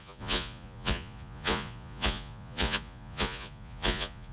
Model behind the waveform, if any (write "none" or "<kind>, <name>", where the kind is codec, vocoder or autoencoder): vocoder, Vocos